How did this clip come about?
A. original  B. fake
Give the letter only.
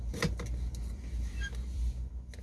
A